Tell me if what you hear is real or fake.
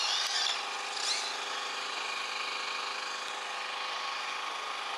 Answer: real